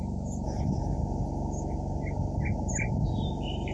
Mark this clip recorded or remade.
recorded